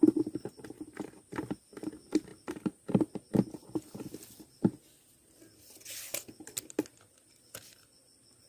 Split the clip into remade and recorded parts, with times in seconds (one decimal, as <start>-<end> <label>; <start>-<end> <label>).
0.0-8.5 recorded